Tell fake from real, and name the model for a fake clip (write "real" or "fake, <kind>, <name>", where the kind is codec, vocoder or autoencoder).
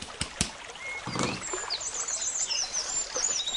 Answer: real